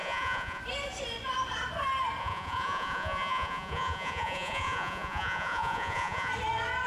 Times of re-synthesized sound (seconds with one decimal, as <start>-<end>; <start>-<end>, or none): 0.0-0.6; 2.2-6.3